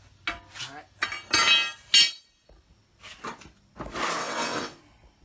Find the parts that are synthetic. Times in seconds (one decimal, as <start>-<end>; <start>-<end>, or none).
4.2-4.8